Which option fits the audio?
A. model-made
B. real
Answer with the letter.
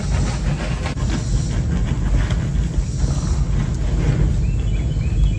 B